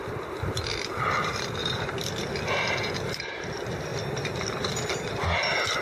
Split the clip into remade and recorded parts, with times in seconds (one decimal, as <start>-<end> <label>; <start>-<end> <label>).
0.0-1.6 recorded; 1.6-2.3 remade; 2.3-5.8 recorded